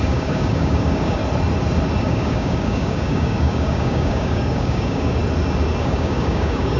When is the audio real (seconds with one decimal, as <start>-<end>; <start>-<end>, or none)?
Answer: 1.2-2.0; 5.2-5.8